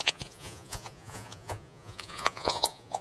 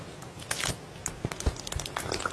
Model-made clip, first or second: first